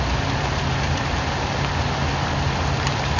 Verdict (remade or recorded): recorded